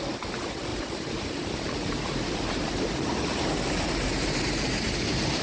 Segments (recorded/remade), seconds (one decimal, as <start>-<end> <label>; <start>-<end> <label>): 0.0-0.7 recorded; 0.7-2.8 remade; 2.8-3.3 recorded; 3.3-4.9 remade; 4.9-5.4 recorded